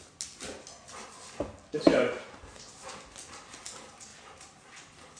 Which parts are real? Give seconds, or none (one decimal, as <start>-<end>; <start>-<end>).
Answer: 0.0-1.7; 3.0-4.1; 4.7-5.2